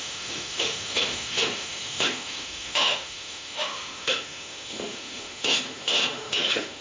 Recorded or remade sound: remade